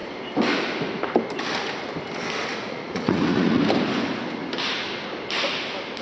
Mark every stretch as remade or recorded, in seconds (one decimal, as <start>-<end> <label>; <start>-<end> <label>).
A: 0.0-2.5 recorded; 2.5-3.6 remade; 3.6-6.0 recorded